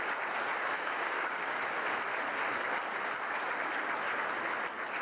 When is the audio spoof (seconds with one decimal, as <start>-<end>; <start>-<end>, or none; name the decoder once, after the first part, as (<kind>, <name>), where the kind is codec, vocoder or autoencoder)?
0.6-1.6 (codec, DAC)

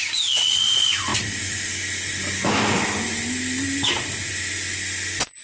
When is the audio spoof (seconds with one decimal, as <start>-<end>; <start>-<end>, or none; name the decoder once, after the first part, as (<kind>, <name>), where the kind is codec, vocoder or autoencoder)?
none